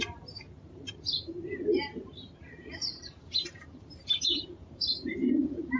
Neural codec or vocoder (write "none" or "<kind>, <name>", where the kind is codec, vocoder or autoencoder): vocoder, BigVGAN v2